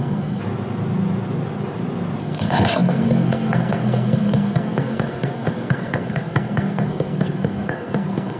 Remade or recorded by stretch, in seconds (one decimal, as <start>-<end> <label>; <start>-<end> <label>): 0.0-0.4 remade; 0.4-2.2 recorded; 2.2-8.4 remade